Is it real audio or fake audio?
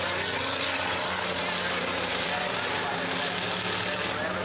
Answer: real